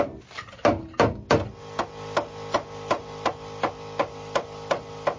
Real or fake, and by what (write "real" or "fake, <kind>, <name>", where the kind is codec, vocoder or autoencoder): real